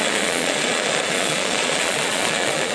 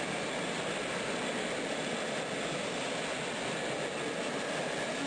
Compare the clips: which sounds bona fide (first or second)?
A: second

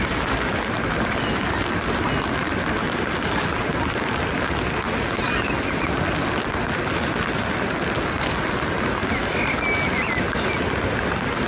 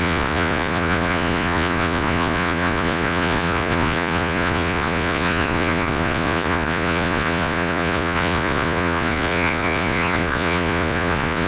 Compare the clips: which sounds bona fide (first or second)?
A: first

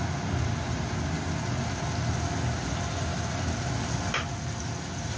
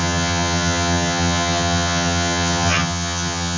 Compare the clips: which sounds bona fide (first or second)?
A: first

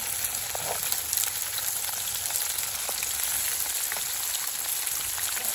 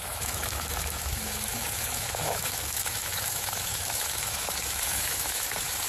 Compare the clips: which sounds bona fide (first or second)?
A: first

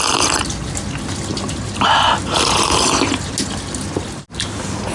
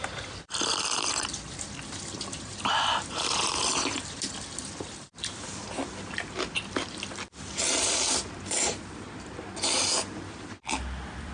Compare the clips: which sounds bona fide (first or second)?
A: first